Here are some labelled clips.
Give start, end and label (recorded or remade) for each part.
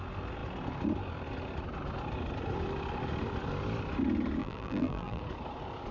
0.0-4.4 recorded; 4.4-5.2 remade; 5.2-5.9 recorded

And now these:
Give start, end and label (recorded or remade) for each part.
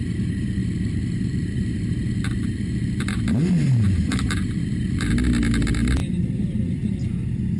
0.0-0.6 recorded; 0.6-5.1 remade; 5.1-6.0 recorded; 6.0-6.6 remade; 6.6-7.6 recorded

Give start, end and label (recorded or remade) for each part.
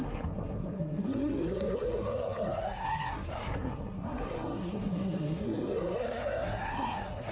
0.0-7.3 remade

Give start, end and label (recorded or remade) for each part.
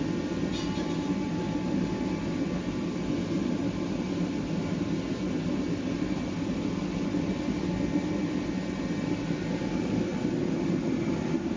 0.0-11.6 recorded